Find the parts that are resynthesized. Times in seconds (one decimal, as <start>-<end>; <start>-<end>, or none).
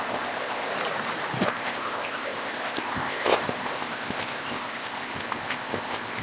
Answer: 0.0-0.7; 1.4-6.2